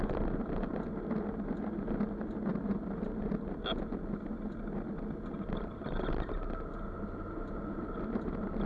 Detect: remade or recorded remade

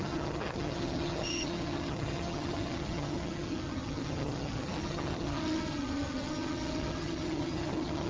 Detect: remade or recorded remade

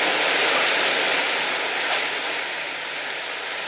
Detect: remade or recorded recorded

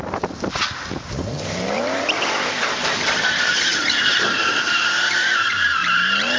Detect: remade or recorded remade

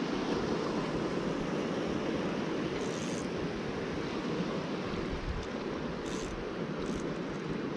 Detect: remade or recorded recorded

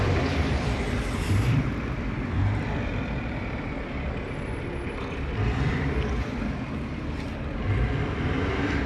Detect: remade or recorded remade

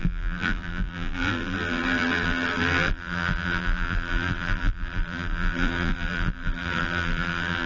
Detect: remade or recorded remade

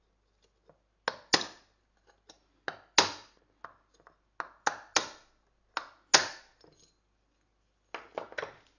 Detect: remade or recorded recorded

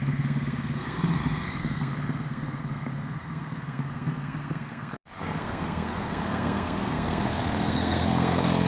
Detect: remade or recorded remade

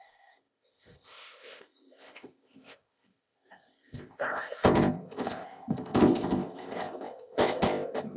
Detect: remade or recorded remade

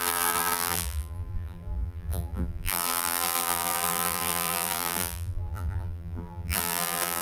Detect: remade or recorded remade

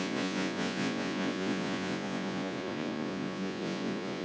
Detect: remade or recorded remade